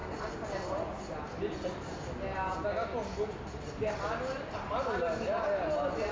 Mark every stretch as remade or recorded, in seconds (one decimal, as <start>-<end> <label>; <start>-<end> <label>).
0.0-6.1 recorded